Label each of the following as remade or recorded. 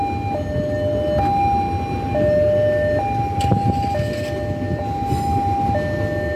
recorded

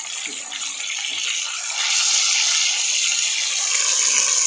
recorded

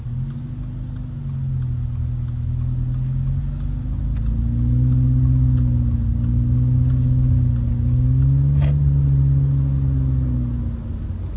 recorded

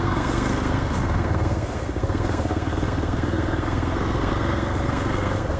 remade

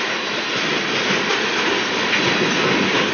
recorded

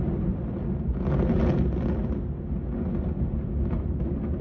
recorded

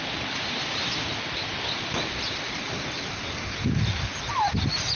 recorded